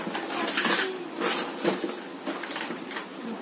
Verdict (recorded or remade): recorded